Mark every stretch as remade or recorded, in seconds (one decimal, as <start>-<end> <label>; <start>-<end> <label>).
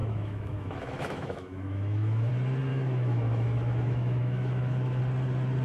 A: 0.0-2.3 remade; 2.3-2.7 recorded; 2.7-5.0 remade; 5.0-5.6 recorded